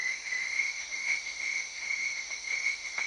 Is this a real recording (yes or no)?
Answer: no